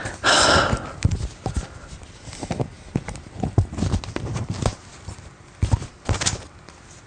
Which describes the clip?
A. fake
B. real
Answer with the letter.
B